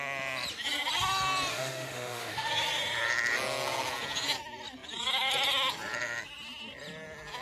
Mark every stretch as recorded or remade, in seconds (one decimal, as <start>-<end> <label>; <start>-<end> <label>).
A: 0.0-1.5 recorded; 1.5-2.5 remade; 2.5-7.4 recorded